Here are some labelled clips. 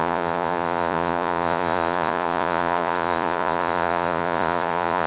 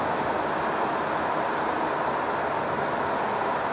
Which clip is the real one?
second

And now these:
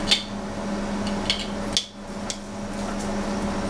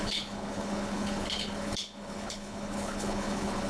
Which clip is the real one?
first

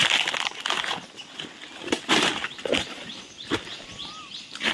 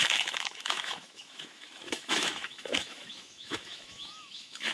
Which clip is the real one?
first